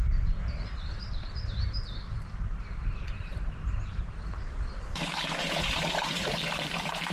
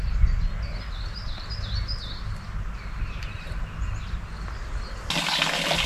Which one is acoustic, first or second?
second